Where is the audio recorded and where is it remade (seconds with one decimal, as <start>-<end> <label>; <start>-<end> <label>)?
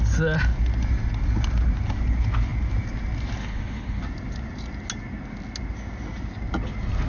0.0-3.4 recorded; 3.4-4.0 remade; 4.0-7.1 recorded